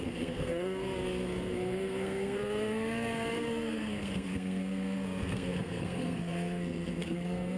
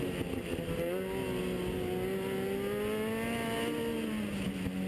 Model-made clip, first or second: first